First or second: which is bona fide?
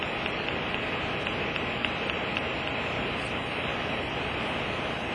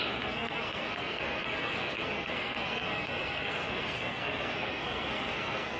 first